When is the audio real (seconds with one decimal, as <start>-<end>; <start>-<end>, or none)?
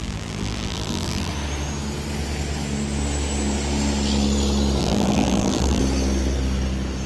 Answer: 1.3-4.8; 5.8-7.1